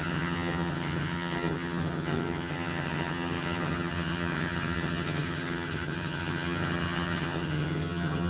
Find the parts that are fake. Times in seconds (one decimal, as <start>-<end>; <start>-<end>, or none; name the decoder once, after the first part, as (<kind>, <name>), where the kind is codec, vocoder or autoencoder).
0.0-8.3 (vocoder, HiFi-GAN)